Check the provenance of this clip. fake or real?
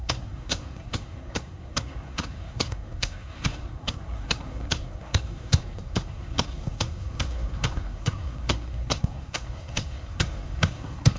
fake